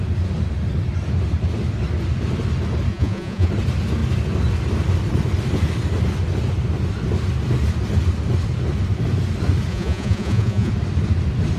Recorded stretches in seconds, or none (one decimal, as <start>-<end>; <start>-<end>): 0.0-2.9; 3.5-9.7; 10.7-11.6